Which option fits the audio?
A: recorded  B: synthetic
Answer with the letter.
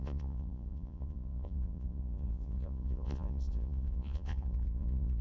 B